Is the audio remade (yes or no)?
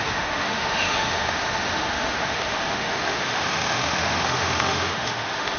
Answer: yes